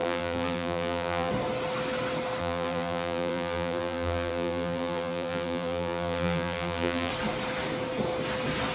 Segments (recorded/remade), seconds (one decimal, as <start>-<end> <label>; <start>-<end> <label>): 0.0-1.3 remade; 1.3-2.4 recorded; 2.4-7.1 remade; 7.1-8.7 recorded